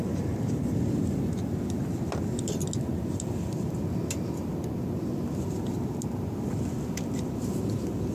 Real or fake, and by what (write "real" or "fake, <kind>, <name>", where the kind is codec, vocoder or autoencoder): real